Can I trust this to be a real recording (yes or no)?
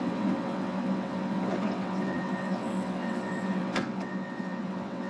no